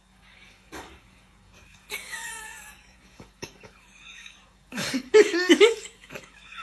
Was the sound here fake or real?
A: fake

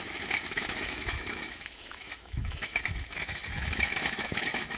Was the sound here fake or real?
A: fake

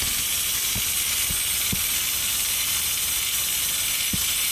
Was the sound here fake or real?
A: real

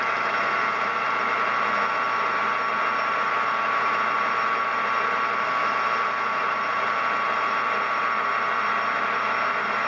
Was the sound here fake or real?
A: real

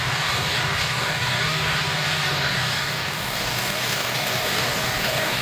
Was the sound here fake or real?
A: fake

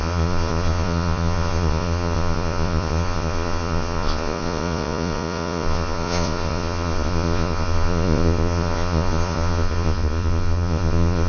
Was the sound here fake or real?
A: fake